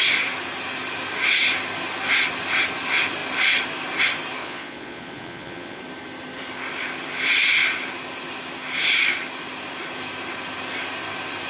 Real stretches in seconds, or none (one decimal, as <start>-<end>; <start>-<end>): 0.0-4.4; 5.8-11.5

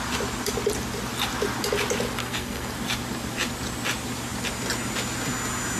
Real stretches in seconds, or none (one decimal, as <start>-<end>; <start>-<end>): 0.0-2.2; 2.7-5.8

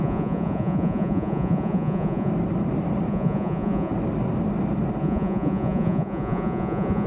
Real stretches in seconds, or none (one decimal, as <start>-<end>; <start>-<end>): 2.3-3.1; 3.9-5.0

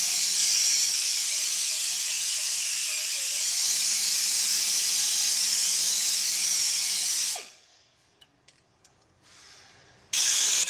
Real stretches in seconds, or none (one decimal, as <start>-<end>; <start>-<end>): 4.7-5.3

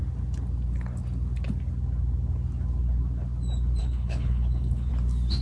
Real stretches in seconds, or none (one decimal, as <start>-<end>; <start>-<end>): 0.0-3.8; 4.9-5.4

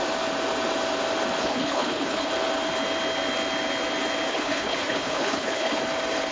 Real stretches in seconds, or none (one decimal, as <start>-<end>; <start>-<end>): 0.0-1.4; 2.3-4.3; 5.8-6.3